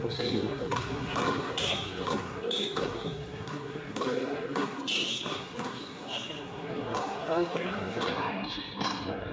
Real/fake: fake